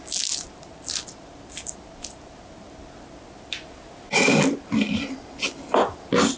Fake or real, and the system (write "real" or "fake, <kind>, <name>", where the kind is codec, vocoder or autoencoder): real